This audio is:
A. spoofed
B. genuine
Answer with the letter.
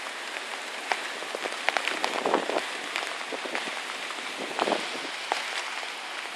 B